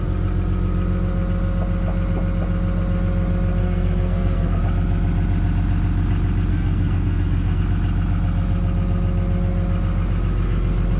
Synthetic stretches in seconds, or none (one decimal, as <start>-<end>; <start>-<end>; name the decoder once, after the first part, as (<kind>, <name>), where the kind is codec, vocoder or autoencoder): 3.6-4.6 (codec, SNAC); 6.5-7.6